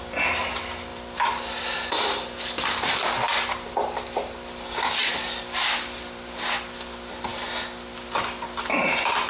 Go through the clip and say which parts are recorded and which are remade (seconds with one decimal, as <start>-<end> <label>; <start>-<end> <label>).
0.0-0.9 recorded; 0.9-5.4 remade; 5.4-9.3 recorded